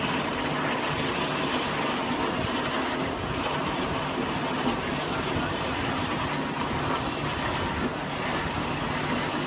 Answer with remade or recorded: recorded